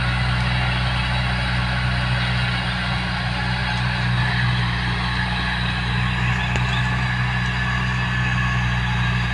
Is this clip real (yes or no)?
yes